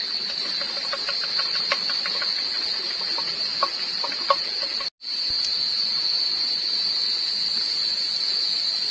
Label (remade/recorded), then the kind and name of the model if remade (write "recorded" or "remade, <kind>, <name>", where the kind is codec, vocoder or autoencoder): recorded